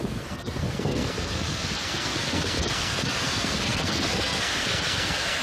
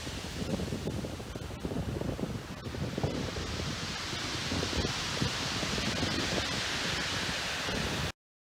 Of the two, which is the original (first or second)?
second